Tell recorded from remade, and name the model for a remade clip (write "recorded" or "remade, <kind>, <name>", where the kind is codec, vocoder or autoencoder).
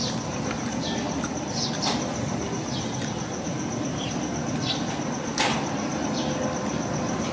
recorded